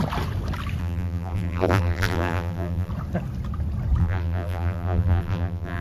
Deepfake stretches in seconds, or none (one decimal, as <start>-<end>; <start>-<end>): 0.8-2.9; 4.0-5.8